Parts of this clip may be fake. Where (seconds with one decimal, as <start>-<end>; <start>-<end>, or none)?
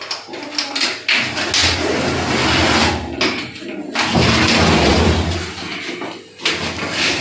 none